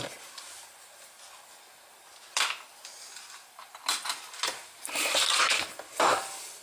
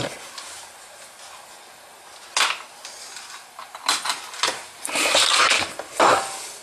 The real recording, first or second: second